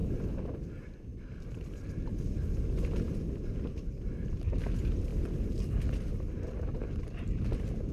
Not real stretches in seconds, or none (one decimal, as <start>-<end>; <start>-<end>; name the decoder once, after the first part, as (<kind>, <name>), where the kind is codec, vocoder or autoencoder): 1.1-3.1 (vocoder, BigVGAN v2)